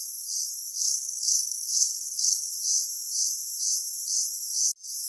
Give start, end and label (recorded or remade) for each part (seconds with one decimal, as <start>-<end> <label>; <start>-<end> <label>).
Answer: 0.0-0.7 recorded; 0.7-2.5 remade; 2.5-5.1 recorded